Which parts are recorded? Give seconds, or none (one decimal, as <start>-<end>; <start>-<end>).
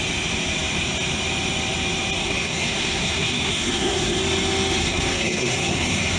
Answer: 0.0-2.2; 4.2-4.8